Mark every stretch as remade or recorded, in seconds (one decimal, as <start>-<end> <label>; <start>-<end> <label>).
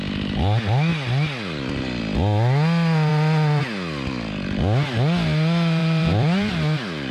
0.0-5.8 recorded; 5.8-6.5 remade; 6.5-7.1 recorded